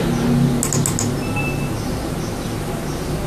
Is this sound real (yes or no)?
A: yes